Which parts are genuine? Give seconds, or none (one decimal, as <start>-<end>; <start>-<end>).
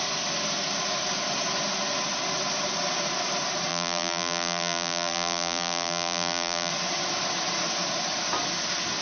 0.0-3.7; 6.7-9.0